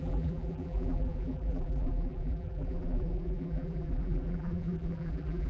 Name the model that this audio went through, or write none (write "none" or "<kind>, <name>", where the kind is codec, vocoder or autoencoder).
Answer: vocoder, BigVGAN v2